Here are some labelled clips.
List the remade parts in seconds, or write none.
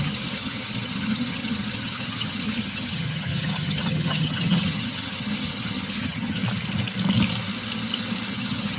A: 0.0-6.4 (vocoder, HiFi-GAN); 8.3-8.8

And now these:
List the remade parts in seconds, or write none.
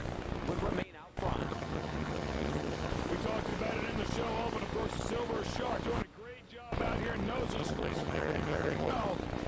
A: 1.4-2.9 (vocoder, HiFi-GAN); 7.6-8.9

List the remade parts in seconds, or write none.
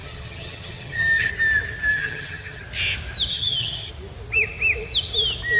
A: 0.0-1.3 (vocoder, HiFi-GAN); 1.9-2.6; 3.3-3.9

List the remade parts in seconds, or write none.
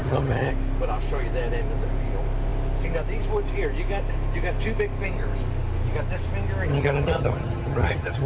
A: 0.0-0.5 (vocoder, HiFi-GAN); 6.7-8.3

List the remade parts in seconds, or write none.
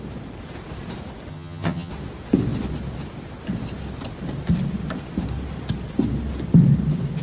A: 1.3-1.9 (vocoder, HiFi-GAN)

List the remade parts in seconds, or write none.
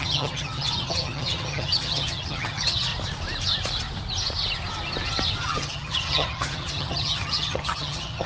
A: 0.0-2.9 (vocoder, HiFi-GAN); 5.4-8.3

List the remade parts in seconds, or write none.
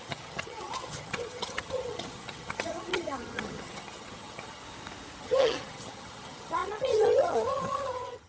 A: 0.0-4.6 (vocoder, HiFi-GAN); 5.2-8.3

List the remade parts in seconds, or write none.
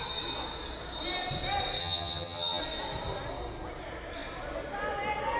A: 1.8-2.6 (vocoder, HiFi-GAN)